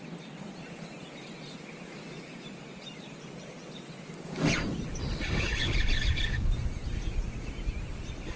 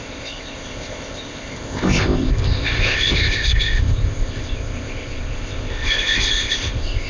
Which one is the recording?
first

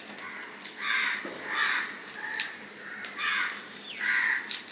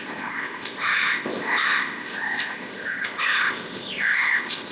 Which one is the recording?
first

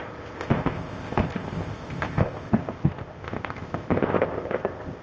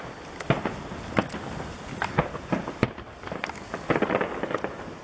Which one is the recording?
second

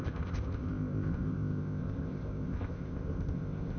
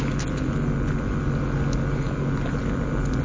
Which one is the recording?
second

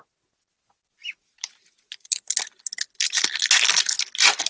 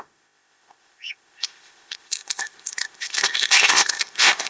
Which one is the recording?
first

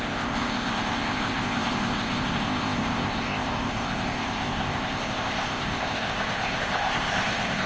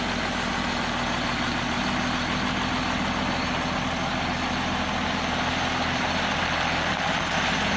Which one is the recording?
second